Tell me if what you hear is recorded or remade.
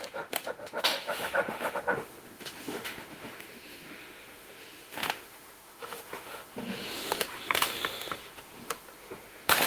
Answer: remade